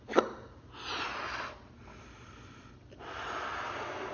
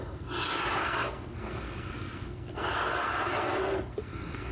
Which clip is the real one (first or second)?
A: first